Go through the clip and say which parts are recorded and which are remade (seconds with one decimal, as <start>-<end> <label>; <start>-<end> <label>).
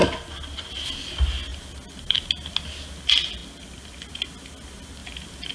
0.0-5.5 recorded